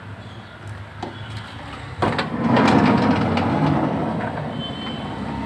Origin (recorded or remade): recorded